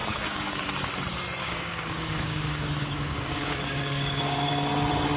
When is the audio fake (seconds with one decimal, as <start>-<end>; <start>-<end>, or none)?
0.0-0.6; 1.4-4.5